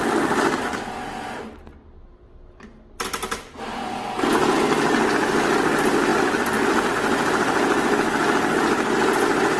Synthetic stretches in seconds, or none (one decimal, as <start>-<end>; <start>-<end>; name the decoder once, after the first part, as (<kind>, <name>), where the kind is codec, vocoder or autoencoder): none